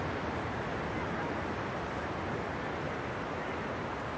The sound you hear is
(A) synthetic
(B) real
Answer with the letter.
B